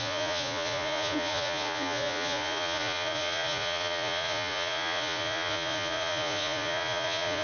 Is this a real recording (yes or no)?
no